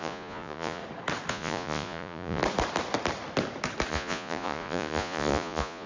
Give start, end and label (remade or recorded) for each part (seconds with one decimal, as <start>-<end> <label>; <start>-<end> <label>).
0.0-0.8 remade; 0.8-1.3 recorded; 1.3-2.4 remade; 2.4-3.9 recorded; 3.9-5.9 remade